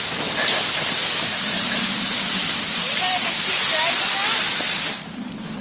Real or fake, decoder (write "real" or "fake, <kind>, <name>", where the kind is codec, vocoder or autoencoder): real